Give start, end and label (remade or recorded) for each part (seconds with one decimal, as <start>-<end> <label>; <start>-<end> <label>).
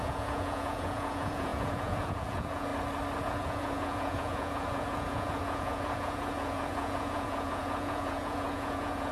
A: 0.0-2.7 remade; 2.7-3.2 recorded; 3.2-9.1 remade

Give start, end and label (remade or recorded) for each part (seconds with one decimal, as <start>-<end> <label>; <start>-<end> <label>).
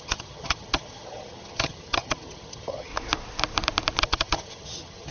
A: 0.0-2.9 remade; 2.9-4.0 recorded; 4.0-5.1 remade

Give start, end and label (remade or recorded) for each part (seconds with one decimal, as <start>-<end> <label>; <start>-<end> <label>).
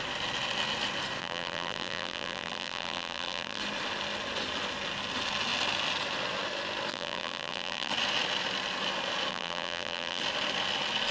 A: 0.0-1.2 recorded; 1.2-3.6 remade; 3.6-6.9 recorded; 6.9-7.9 remade; 7.9-9.3 recorded; 9.3-10.2 remade; 10.2-11.1 recorded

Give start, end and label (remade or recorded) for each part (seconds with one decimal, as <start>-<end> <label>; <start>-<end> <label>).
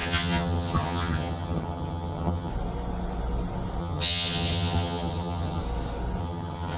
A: 0.0-2.5 remade; 2.5-3.8 recorded; 3.8-5.6 remade; 5.6-6.2 recorded; 6.2-6.8 remade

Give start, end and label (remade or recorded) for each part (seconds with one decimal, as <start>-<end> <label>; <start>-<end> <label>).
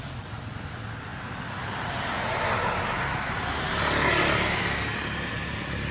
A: 0.0-5.9 recorded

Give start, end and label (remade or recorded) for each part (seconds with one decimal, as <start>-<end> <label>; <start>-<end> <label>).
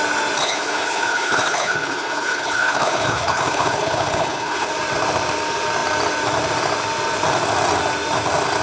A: 0.0-0.4 recorded; 0.4-4.7 remade; 4.7-8.6 recorded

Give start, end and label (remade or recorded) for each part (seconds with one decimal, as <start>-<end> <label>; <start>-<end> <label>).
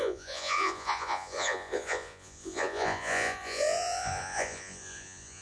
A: 0.0-5.4 remade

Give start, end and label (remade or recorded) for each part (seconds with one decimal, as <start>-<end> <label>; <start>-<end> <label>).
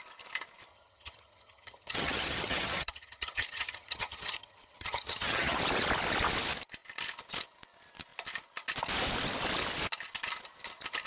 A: 0.0-0.7 recorded; 0.7-5.6 remade; 5.6-11.1 recorded